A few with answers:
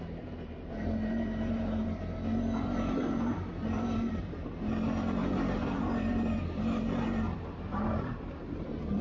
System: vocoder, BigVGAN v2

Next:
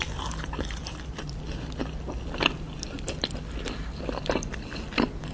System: none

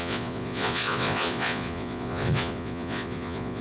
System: vocoder, Vocos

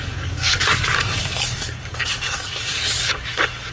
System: codec, DAC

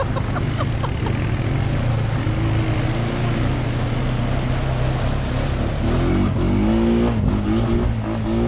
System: none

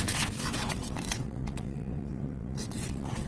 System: vocoder, WaveNeXt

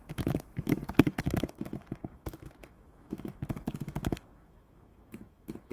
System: autoencoder, DAC-VAE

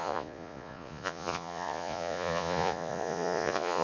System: vocoder, Vocos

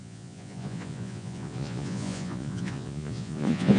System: vocoder, Vocos